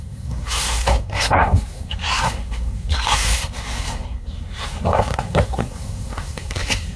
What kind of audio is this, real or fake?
fake